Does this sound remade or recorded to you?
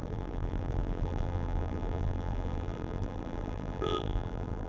remade